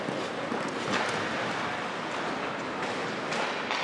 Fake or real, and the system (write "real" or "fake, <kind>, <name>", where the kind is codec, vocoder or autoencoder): real